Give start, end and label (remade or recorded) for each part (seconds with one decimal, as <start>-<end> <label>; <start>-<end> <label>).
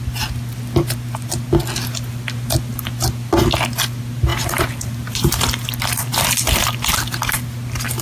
0.0-4.3 recorded; 4.3-5.3 remade; 5.3-8.0 recorded